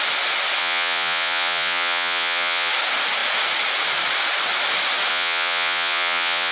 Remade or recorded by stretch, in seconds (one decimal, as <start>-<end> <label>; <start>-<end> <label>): 0.0-0.6 recorded; 0.6-2.7 remade; 2.7-5.1 recorded; 5.1-6.5 remade